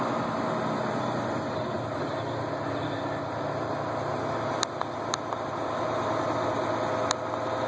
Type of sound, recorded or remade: recorded